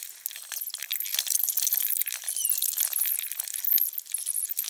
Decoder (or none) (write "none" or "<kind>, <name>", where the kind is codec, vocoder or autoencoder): none